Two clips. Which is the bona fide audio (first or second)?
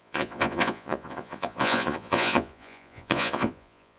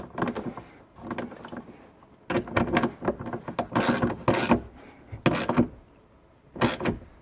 second